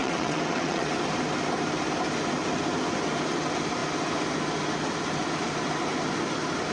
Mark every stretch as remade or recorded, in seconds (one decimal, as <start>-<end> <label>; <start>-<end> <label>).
0.0-0.9 remade; 0.9-6.7 recorded